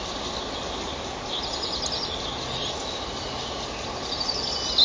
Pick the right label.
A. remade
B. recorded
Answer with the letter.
B